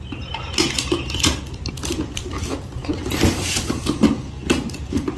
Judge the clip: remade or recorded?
recorded